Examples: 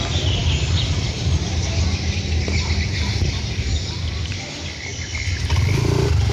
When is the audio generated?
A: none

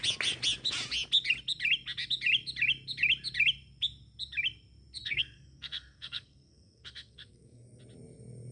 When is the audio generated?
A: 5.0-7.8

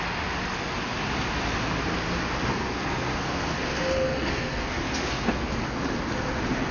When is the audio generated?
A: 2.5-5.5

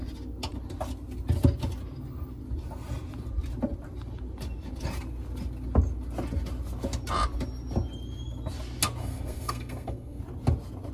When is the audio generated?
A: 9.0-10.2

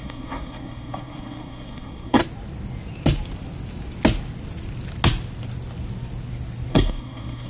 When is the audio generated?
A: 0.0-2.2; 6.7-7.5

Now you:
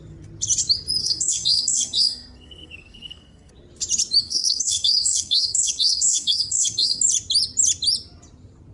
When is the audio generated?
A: 1.0-3.5; 4.2-7.0